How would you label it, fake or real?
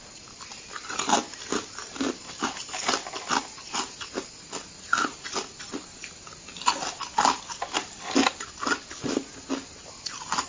real